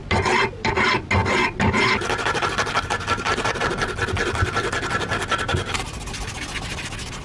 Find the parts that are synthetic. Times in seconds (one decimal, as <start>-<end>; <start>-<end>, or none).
none